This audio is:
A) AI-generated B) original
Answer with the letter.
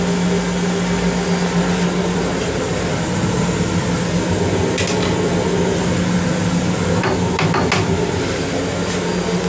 B